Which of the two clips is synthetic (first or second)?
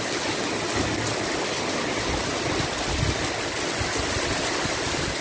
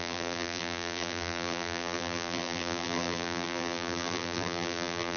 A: second